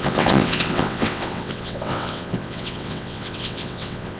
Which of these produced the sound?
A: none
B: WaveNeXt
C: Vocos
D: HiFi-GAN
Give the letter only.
B